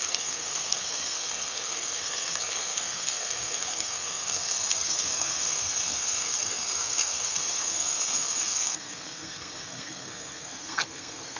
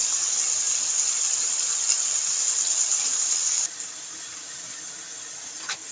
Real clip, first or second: second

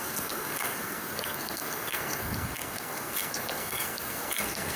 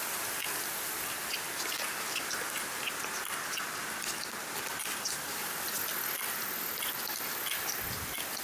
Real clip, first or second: second